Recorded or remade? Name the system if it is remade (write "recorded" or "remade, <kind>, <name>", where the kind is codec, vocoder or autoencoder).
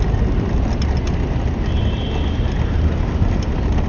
recorded